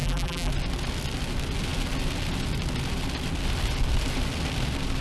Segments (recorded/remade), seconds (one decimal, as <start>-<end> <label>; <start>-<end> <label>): 0.0-0.5 remade; 0.5-5.0 recorded